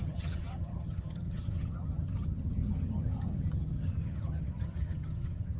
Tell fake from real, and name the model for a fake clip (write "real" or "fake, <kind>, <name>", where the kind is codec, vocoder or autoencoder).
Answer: fake, vocoder, HiFi-GAN